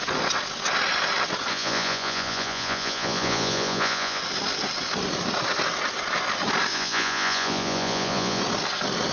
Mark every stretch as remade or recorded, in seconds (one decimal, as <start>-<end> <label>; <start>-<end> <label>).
0.0-1.5 recorded; 1.5-4.2 remade; 4.2-6.7 recorded; 6.7-8.4 remade; 8.4-9.1 recorded